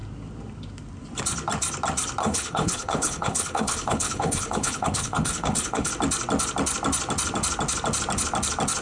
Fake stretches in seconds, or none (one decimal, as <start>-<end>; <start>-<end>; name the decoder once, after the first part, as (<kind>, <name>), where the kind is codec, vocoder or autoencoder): 2.2-5.9 (codec, HILCodec)